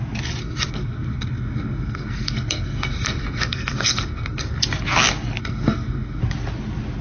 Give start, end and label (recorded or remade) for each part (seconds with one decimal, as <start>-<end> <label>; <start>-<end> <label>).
0.0-0.4 recorded; 0.4-4.6 remade; 4.6-5.4 recorded; 5.4-6.2 remade; 6.2-7.0 recorded